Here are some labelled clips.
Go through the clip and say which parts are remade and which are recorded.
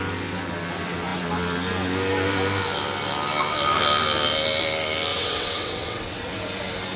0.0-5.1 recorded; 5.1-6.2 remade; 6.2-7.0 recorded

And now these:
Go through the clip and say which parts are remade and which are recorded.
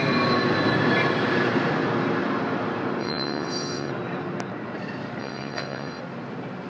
0.0-3.0 recorded; 3.0-3.9 remade; 3.9-5.2 recorded; 5.2-6.0 remade; 6.0-6.7 recorded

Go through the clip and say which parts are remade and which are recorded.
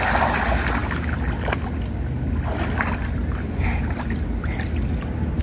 0.0-5.4 recorded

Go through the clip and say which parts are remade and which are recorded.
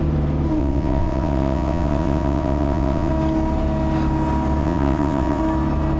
0.0-0.6 recorded; 0.6-3.1 remade; 3.1-4.6 recorded; 4.6-5.4 remade; 5.4-6.0 recorded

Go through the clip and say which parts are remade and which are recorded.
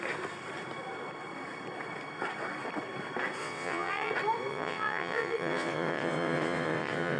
0.0-3.4 recorded; 3.4-4.1 remade; 4.1-4.5 recorded; 4.5-7.2 remade